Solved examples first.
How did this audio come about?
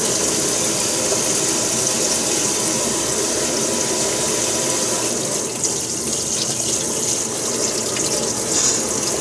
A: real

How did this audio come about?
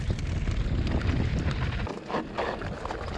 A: real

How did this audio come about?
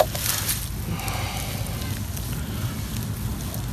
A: real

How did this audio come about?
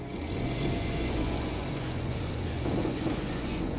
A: fake